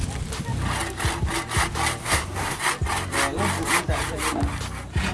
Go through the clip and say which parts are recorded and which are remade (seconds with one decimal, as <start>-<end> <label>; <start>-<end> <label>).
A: 0.0-2.0 recorded; 2.0-2.6 remade; 2.6-5.1 recorded